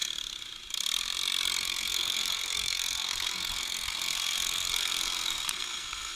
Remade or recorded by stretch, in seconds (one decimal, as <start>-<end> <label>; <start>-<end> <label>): 0.0-1.6 recorded; 1.6-6.2 remade